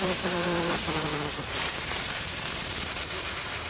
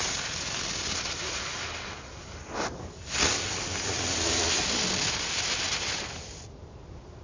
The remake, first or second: first